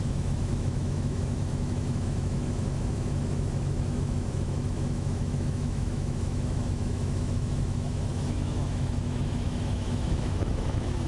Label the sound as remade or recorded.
remade